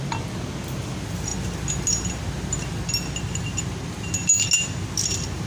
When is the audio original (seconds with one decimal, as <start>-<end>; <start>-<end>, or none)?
0.0-5.5